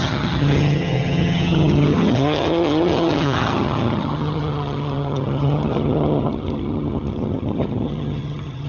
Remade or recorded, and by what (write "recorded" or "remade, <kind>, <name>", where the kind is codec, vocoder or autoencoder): remade, vocoder, HiFi-GAN